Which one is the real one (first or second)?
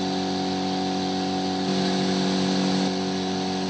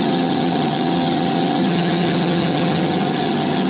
first